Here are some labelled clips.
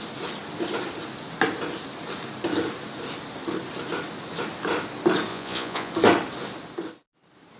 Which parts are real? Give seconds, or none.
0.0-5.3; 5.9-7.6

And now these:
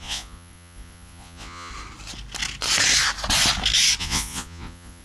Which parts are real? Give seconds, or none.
1.7-4.0